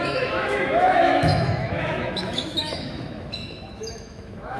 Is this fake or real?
fake